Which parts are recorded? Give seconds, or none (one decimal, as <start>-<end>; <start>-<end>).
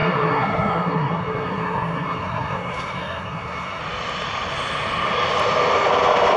3.8-6.4